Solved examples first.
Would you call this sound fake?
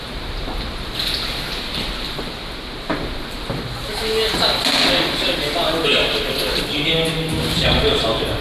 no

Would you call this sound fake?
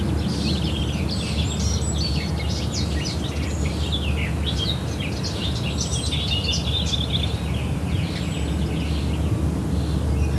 no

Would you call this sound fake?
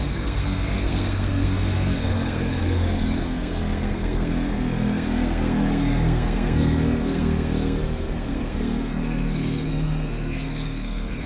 yes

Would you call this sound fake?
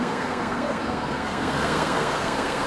yes